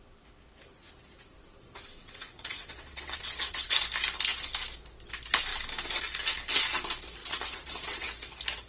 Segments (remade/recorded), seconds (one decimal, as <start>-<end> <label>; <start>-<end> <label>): 0.0-2.0 recorded; 2.0-3.7 remade; 3.7-7.2 recorded; 7.2-8.0 remade; 8.0-8.7 recorded